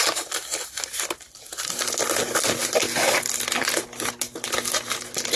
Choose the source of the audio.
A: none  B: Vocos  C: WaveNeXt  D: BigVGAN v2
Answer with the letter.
A